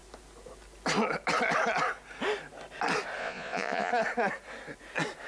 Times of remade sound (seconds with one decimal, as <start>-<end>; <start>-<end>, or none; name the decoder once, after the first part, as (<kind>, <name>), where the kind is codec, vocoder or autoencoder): 3.2-3.9 (vocoder, Vocos)

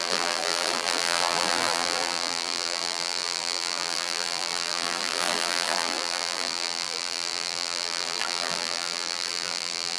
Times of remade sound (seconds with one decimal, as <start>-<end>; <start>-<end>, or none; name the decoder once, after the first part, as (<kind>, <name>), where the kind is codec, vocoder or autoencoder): 0.0-10.0 (vocoder, BigVGAN v2)

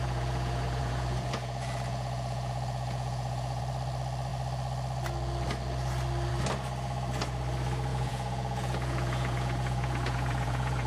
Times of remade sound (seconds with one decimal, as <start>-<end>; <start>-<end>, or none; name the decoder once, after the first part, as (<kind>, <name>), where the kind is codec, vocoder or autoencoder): 0.0-3.6 (vocoder, Vocos); 7.9-10.9

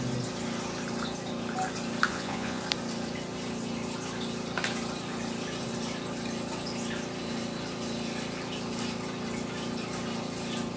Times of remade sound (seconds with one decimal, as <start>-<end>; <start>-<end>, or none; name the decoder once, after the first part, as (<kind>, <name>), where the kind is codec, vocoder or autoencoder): 2.1-2.6 (vocoder, Vocos)

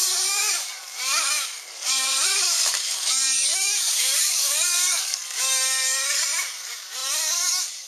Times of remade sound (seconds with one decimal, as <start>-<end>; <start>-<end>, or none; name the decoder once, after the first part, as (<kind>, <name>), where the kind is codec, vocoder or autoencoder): 0.0-7.9 (codec, DAC)

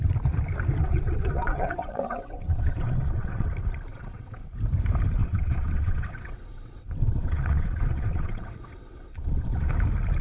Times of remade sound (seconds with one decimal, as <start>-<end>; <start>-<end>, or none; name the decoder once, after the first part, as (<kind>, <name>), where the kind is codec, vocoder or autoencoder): 0.8-3.5 (vocoder, WaveNeXt); 3.9-4.5; 5.2-9.7

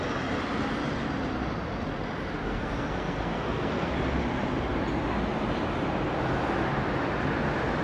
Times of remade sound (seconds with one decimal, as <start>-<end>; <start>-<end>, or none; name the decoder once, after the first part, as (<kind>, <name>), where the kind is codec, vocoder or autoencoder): 2.4-3.9 (codec, SNAC)